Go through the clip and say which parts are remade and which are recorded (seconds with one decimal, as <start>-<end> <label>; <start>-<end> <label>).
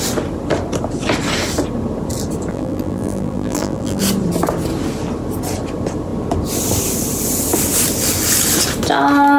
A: 0.0-2.5 recorded; 2.5-4.0 remade; 4.0-9.4 recorded